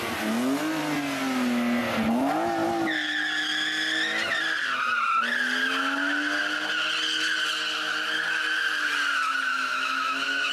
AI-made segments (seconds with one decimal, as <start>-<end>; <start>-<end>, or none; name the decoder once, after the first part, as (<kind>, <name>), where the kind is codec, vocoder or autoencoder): 9.5-10.5 (autoencoder, DAC-VAE)